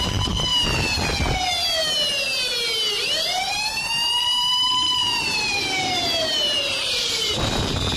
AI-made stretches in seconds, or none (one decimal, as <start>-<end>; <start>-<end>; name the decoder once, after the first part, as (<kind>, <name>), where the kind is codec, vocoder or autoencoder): 0.0-0.5 (vocoder, BigVGAN v2); 2.9-8.0